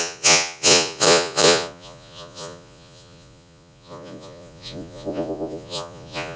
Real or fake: fake